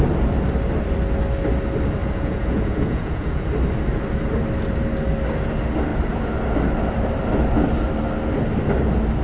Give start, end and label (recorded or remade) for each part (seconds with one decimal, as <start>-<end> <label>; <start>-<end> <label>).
0.0-2.0 recorded; 2.0-3.5 remade; 3.5-9.2 recorded